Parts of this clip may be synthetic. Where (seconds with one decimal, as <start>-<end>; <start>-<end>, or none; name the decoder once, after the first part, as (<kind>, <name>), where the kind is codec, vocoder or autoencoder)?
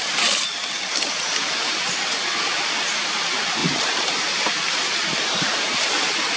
3.6-4.1 (vocoder, BigVGAN v2)